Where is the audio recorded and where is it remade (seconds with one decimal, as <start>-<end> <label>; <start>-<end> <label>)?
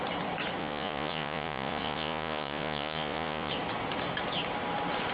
0.0-0.6 recorded; 0.6-3.5 remade; 3.5-5.1 recorded